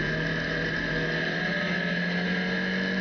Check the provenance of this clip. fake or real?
real